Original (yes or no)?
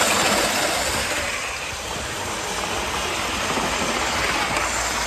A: yes